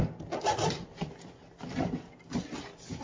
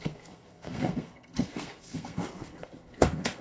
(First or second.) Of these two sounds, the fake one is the second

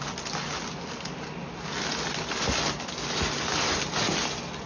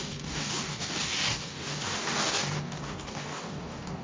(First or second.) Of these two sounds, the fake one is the second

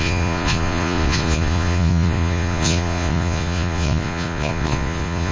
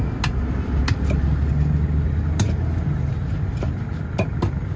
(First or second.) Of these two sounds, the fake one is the first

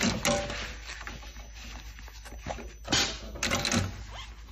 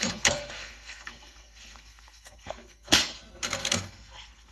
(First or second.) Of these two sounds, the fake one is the second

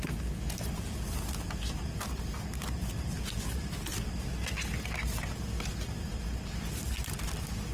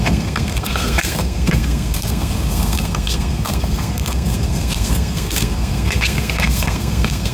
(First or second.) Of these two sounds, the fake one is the second